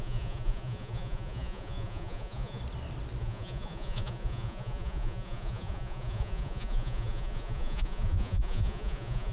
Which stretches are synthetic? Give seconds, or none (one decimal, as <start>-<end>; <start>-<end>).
0.0-2.6; 3.2-9.3